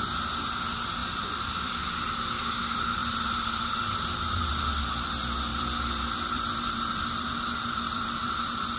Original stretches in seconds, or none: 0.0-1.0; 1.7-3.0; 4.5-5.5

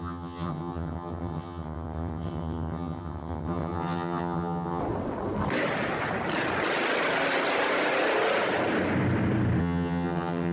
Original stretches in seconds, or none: 4.8-9.6

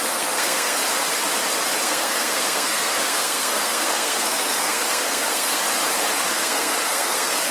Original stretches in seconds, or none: 0.8-1.8; 5.6-6.3

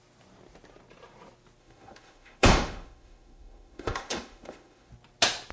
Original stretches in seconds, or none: 0.0-1.6; 4.9-5.5

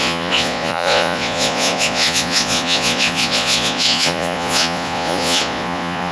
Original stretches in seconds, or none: none

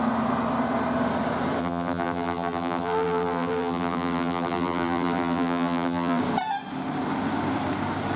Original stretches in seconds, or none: 0.0-1.6; 6.2-8.2